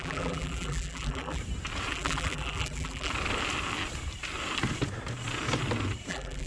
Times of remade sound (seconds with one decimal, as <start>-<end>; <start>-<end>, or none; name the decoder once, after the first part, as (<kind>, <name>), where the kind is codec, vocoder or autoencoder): 0.0-1.4 (vocoder, BigVGAN v2); 1.9-3.1; 6.1-6.5